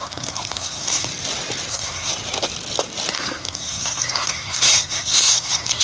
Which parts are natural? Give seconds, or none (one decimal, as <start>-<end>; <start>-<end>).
1.1-1.7; 2.1-3.1